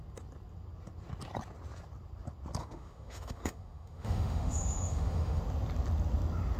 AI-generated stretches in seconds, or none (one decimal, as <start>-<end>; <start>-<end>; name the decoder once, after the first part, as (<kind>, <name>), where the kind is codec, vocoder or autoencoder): 2.6-5.4 (autoencoder, DAC-VAE)